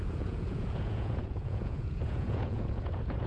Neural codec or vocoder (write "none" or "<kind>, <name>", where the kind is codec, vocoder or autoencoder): vocoder, Vocos